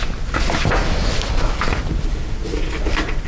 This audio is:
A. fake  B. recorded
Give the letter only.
B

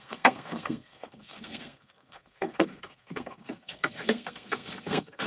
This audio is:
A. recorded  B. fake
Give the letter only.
B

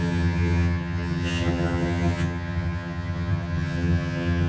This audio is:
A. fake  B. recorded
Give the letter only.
A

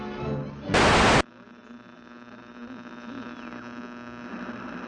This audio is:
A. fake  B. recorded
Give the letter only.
B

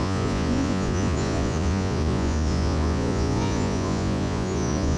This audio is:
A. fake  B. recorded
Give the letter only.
A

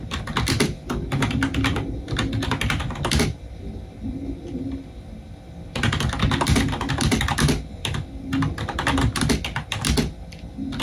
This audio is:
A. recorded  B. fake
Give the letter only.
A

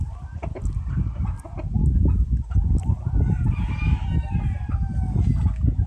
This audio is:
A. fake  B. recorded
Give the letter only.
B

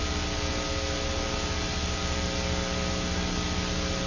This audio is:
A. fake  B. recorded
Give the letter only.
B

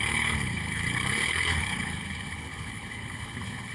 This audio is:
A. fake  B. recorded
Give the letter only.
A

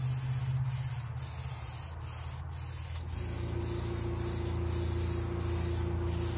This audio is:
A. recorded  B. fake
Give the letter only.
A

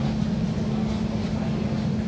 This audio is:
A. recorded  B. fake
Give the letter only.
A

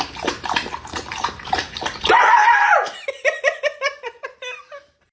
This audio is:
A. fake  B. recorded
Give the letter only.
A